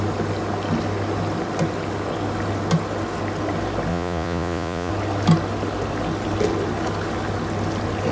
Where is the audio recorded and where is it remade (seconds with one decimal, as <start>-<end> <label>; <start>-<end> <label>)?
0.0-3.9 recorded; 3.9-4.9 remade; 4.9-8.1 recorded